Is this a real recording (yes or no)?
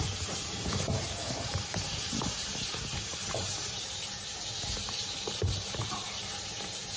no